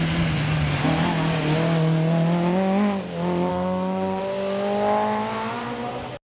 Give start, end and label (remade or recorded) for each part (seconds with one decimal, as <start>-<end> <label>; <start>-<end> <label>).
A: 0.0-3.5 recorded; 3.5-4.2 remade; 4.2-6.3 recorded